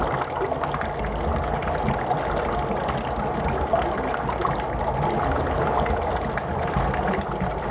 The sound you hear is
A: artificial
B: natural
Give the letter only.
B